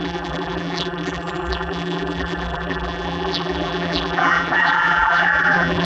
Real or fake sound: fake